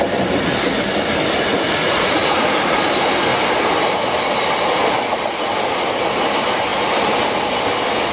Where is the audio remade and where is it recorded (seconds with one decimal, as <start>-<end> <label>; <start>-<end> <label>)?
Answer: 0.0-1.8 recorded; 1.8-2.8 remade; 2.8-8.1 recorded